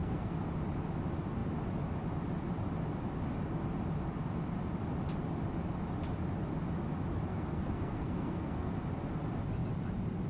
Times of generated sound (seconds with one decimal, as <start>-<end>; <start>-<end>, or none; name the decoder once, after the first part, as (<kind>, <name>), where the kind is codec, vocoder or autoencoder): 0.0-0.5 (codec, SNAC); 7.3-8.7